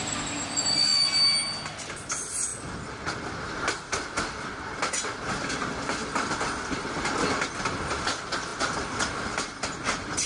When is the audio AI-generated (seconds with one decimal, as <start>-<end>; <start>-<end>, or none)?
none